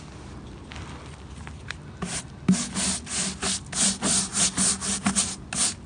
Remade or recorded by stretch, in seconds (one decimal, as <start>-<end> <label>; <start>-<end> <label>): 0.0-5.9 recorded